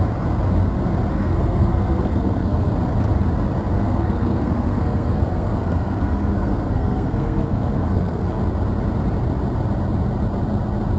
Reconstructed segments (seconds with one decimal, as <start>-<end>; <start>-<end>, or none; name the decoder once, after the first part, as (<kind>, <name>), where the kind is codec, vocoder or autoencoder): 1.1-2.7 (codec, SNAC); 3.7-8.4